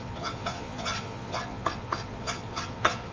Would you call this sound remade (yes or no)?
yes